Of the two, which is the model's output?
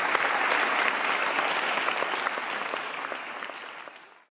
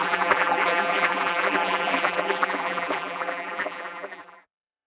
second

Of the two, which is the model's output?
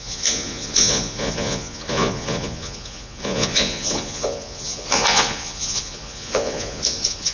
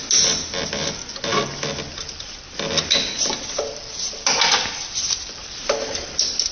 first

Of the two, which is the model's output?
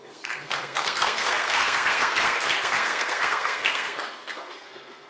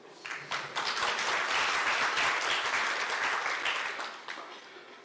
first